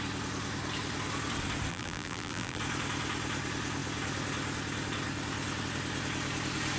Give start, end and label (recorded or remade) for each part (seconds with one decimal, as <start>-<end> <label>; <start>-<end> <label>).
0.0-1.7 recorded; 1.7-2.6 remade; 2.6-6.8 recorded

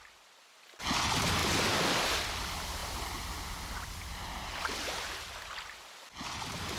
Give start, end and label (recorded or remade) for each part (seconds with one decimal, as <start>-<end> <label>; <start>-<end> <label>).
0.0-6.8 recorded